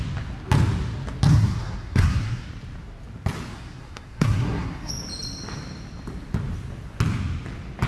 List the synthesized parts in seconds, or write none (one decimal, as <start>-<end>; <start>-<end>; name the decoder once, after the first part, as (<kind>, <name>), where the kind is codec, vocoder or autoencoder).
1.3-2.5 (codec, SNAC); 3.5-4.9